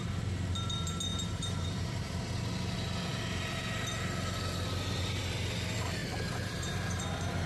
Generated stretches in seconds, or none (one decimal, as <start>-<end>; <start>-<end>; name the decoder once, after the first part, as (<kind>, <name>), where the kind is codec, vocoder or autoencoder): 1.1-2.2 (vocoder, BigVGAN v2); 6.0-7.0